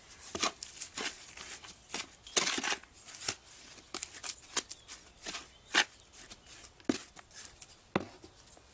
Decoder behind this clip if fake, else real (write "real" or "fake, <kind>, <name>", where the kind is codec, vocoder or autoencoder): real